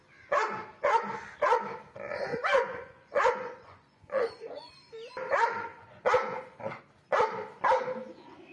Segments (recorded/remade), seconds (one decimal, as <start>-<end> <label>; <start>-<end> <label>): 0.0-2.3 recorded; 2.3-4.7 remade; 4.7-5.7 recorded; 5.7-6.8 remade; 6.8-8.5 recorded